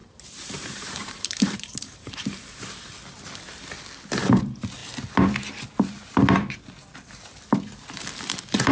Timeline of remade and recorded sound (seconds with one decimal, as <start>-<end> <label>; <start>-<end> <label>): 0.0-2.6 remade; 2.6-8.7 recorded